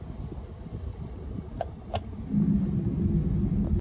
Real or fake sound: real